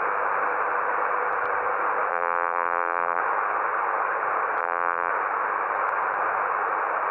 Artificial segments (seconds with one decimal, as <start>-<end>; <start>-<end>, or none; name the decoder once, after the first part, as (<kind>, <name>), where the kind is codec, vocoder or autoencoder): 2.1-3.2 (vocoder, BigVGAN v2); 4.6-5.1

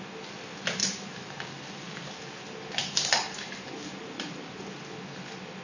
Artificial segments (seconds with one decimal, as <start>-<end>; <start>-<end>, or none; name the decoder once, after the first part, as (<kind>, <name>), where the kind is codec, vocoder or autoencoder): 0.8-2.1 (vocoder, BigVGAN v2); 2.8-4.6